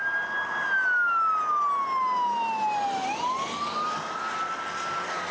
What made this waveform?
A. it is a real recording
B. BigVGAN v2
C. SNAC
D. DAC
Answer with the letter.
A